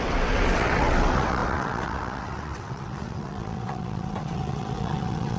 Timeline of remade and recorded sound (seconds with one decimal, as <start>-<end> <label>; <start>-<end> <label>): 0.0-5.4 remade